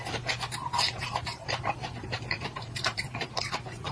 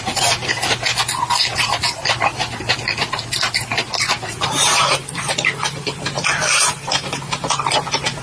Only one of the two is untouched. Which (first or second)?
second